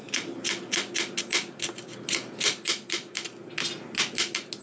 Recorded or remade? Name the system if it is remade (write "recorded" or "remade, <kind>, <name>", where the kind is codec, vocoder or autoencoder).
recorded